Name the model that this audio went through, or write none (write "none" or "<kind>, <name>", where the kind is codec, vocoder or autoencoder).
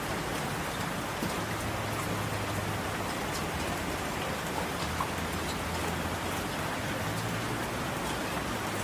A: none